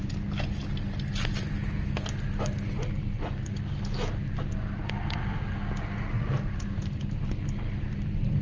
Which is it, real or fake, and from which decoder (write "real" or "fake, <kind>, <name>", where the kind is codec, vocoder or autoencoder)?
real